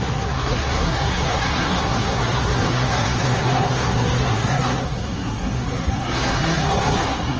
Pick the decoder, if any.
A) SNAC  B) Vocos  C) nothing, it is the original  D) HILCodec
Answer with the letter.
A